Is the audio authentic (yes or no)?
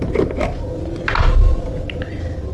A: yes